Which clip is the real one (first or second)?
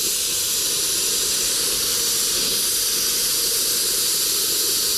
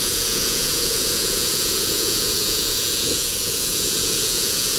first